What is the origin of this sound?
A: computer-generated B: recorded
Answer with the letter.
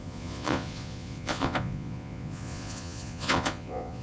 A